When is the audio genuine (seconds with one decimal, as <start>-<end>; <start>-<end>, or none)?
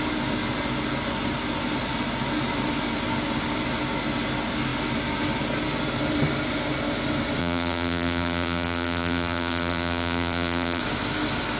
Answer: 0.0-7.4; 10.8-11.6